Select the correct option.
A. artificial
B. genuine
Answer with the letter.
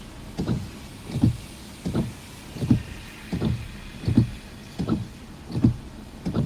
B